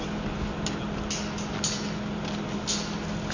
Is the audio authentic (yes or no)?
yes